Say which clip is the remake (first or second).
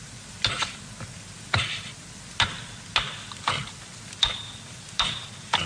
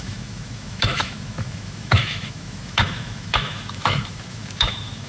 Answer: second